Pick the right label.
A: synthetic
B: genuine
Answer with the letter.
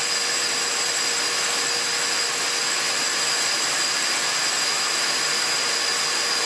B